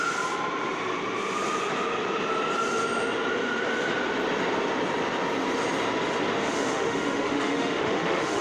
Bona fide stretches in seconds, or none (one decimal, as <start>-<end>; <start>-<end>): 0.0-6.4